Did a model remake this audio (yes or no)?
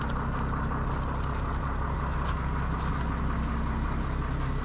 no